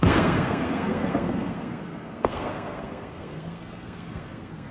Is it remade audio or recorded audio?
remade